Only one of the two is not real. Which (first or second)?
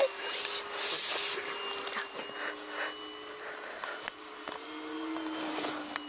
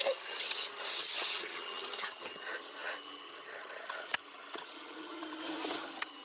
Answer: second